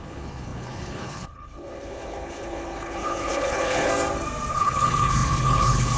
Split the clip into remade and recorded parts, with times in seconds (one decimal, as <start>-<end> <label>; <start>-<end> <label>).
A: 0.0-3.9 remade; 3.9-4.5 recorded; 4.5-6.0 remade